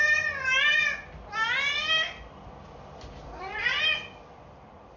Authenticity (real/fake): real